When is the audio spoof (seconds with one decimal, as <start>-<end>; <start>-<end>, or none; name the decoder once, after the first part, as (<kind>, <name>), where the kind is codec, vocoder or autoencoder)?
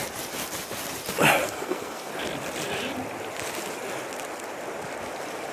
1.4-2.1 (codec, SNAC)